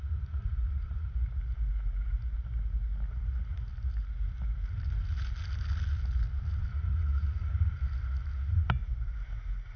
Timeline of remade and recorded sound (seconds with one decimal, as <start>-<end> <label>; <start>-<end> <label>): 0.0-1.1 remade; 1.1-6.7 recorded; 6.7-7.5 remade; 7.5-9.8 recorded